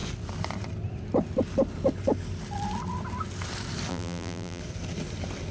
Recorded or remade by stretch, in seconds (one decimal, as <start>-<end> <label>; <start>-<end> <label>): 0.0-3.9 recorded; 3.9-4.6 remade; 4.6-5.5 recorded